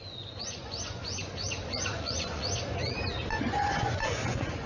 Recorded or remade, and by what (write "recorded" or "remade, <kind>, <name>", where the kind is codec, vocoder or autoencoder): remade, vocoder, Vocos